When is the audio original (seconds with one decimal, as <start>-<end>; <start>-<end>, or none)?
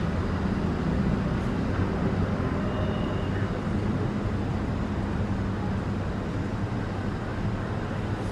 0.0-8.3